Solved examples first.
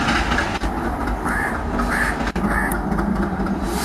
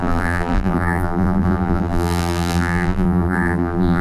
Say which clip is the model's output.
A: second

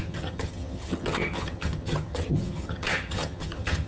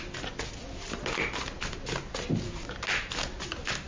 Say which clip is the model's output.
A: first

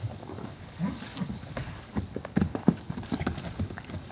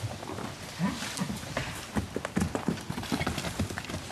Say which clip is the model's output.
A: first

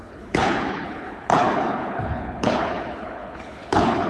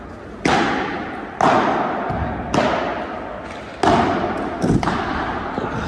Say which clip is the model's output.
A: first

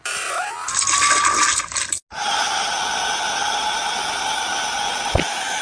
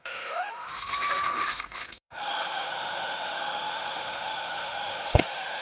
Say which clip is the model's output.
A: second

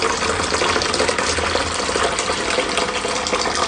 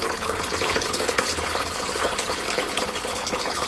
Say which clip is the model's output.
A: second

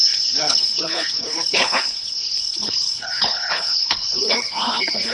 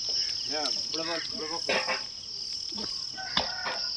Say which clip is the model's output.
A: first